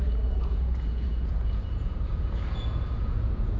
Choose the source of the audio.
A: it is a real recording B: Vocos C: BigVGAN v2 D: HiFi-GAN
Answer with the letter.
B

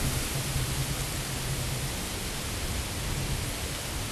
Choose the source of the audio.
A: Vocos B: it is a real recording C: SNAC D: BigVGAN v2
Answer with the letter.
B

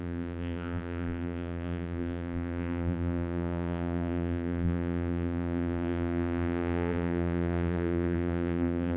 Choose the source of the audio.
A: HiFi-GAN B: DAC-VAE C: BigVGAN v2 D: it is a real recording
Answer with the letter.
C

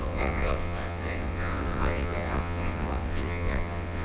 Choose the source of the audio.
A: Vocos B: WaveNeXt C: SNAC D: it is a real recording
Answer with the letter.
B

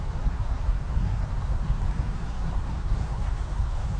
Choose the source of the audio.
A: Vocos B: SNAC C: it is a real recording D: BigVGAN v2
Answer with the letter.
B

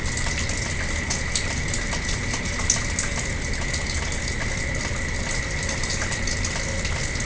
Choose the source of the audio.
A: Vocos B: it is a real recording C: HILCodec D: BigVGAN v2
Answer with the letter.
B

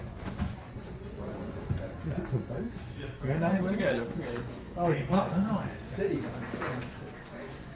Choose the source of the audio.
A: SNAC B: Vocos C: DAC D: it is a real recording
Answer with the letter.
B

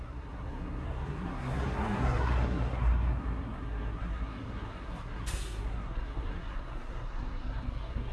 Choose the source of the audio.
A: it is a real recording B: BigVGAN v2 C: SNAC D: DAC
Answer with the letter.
C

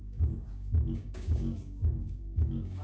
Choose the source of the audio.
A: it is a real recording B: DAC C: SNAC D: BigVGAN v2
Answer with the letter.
B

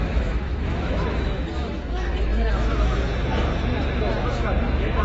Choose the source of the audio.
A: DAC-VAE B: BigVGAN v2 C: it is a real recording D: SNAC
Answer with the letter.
A